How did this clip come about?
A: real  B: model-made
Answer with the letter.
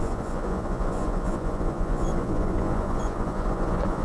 B